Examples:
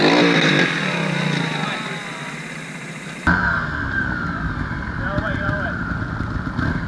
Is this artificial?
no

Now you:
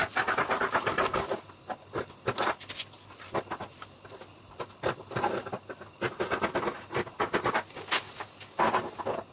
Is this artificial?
no